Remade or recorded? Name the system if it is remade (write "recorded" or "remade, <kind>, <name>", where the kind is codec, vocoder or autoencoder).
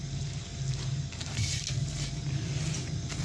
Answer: recorded